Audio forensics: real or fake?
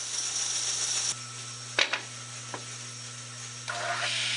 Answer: real